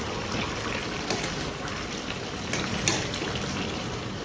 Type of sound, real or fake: real